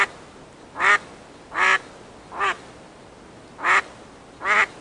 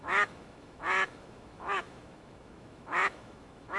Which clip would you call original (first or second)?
first